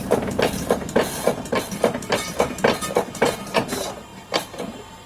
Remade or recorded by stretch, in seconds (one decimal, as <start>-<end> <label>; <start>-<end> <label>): 0.0-2.6 remade; 2.6-5.1 recorded